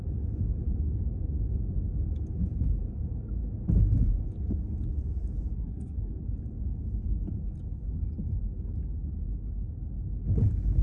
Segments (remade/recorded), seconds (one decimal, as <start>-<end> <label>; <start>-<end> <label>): 0.0-5.6 recorded; 5.6-6.1 remade; 6.1-10.8 recorded